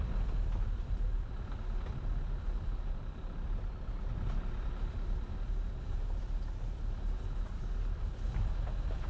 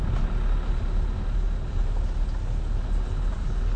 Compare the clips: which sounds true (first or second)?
second